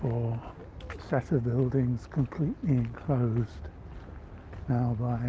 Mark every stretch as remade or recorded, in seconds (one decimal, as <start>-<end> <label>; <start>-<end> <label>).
0.0-5.3 recorded